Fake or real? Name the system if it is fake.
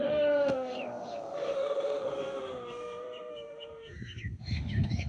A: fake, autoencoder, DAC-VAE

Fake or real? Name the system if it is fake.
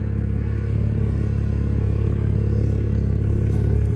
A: fake, codec, SNAC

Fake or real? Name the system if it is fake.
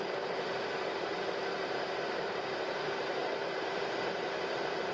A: fake, vocoder, BigVGAN v2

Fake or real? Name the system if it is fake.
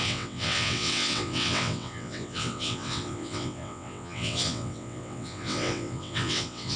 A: fake, vocoder, WaveNeXt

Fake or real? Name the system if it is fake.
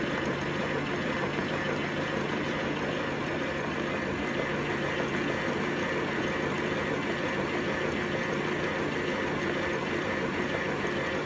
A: fake, vocoder, BigVGAN v2